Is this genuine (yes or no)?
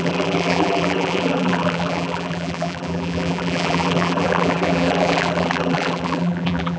no